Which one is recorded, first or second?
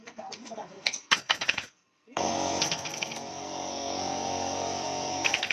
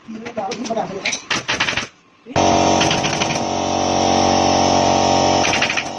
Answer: second